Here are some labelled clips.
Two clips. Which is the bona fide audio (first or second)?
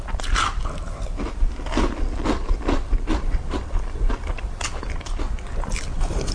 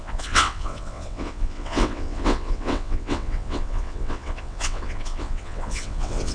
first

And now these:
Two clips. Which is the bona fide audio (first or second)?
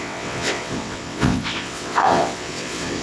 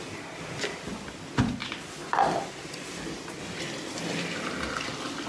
second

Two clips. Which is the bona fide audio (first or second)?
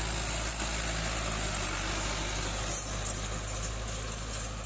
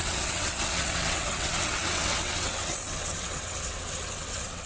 first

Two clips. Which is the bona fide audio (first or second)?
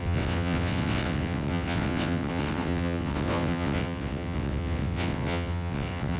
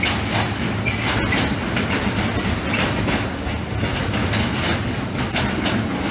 second